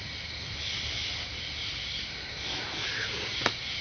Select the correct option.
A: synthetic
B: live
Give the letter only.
B